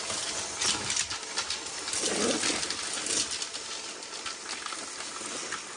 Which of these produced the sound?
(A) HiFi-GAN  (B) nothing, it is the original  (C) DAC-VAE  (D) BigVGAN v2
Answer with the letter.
B